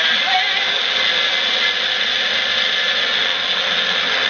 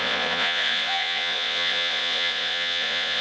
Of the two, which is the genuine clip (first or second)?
first